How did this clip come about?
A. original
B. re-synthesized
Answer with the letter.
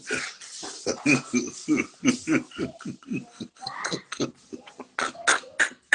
A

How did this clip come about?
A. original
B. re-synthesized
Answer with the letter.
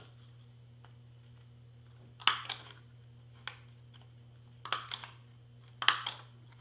A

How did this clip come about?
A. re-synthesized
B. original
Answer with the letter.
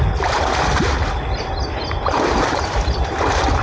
B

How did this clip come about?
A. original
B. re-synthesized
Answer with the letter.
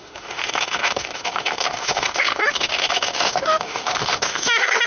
B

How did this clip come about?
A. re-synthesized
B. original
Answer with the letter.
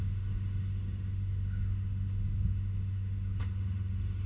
A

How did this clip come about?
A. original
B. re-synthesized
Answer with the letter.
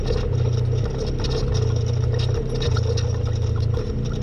A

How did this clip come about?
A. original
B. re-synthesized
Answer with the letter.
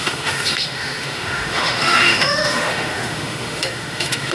B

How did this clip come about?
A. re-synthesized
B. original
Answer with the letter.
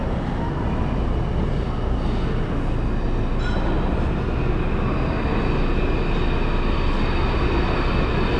B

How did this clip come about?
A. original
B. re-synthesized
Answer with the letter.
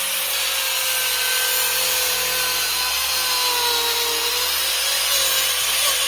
A